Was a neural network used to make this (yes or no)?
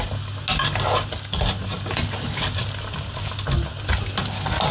no